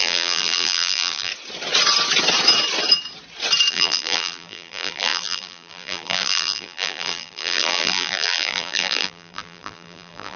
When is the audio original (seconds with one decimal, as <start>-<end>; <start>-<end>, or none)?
1.3-3.7